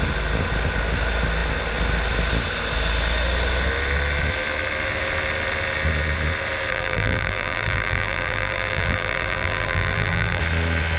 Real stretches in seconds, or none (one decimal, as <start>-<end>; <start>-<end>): 0.0-6.7; 10.4-11.0